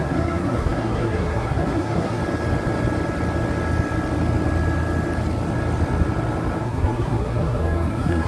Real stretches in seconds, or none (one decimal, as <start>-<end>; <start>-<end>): 2.2-6.6